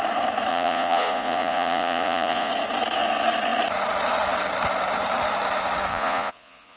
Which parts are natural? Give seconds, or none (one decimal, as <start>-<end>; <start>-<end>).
0.0-0.5; 2.5-5.9